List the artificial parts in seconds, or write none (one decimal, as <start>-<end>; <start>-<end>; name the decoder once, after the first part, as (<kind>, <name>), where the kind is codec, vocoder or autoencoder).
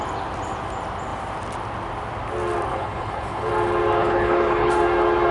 2.7-3.5 (codec, HILCodec); 4.0-4.7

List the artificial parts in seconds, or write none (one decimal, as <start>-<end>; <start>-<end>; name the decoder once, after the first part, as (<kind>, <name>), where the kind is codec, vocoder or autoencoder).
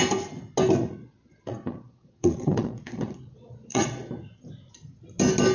0.8-4.1 (vocoder, Vocos)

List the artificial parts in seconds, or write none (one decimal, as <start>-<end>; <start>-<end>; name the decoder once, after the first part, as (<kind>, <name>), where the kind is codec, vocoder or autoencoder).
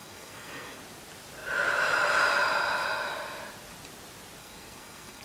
0.0-0.8 (codec, SNAC); 4.4-5.2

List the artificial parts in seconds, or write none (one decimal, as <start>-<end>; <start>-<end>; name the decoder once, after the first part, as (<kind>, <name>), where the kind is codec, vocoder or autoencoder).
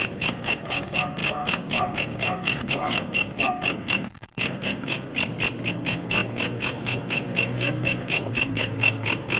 0.0-5.1 (codec, SNAC); 5.7-9.4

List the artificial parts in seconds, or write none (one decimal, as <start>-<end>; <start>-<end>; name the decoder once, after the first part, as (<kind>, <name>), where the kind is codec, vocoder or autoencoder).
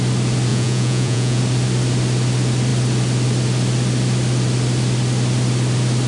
0.5-1.4 (vocoder, Vocos)